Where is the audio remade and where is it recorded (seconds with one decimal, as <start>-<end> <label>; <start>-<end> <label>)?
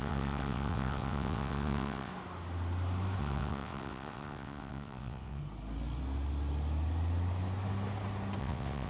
0.0-2.1 remade; 2.1-3.2 recorded; 3.2-5.4 remade; 5.4-8.4 recorded; 8.4-8.9 remade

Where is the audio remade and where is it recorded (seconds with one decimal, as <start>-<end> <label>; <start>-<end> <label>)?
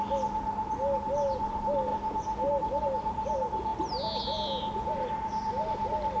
0.0-6.2 recorded